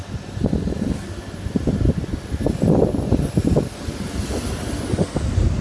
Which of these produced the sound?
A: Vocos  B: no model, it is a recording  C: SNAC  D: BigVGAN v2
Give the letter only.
B